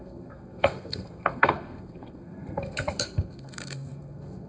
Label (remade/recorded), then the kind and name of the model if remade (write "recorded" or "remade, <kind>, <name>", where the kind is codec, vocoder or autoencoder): remade, codec, SNAC